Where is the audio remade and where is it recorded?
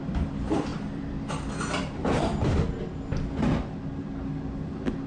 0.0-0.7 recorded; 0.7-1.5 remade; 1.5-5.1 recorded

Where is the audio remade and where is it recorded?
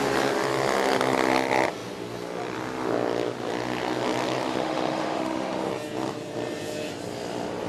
0.0-4.5 recorded; 4.5-5.7 remade; 5.7-7.7 recorded